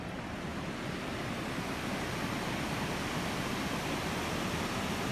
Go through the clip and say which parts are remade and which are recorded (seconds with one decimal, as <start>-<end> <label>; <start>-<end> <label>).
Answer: 0.0-5.1 recorded